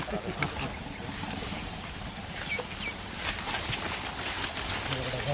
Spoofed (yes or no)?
no